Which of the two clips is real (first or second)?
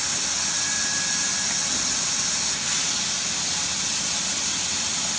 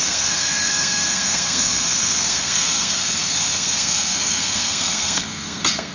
first